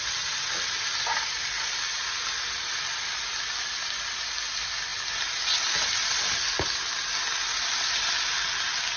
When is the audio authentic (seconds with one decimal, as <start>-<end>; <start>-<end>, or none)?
0.0-9.0